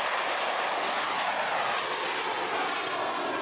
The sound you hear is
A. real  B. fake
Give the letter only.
A